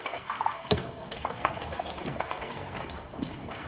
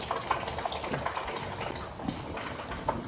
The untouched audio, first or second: second